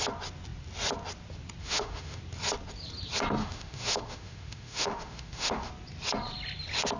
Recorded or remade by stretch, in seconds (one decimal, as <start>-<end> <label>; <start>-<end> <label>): 0.0-1.6 recorded; 1.6-2.2 remade; 2.2-3.4 recorded; 3.4-5.7 remade; 5.7-7.0 recorded